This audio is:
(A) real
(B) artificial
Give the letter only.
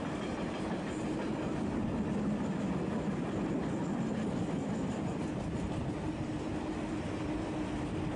A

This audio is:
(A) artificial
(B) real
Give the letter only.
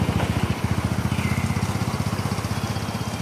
B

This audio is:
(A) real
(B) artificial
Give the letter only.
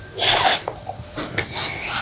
A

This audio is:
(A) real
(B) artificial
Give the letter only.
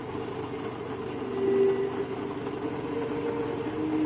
A